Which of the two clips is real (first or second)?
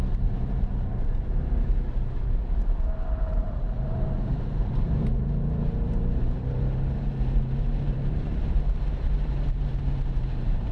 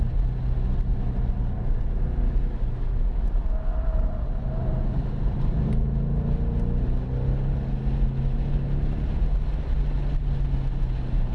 second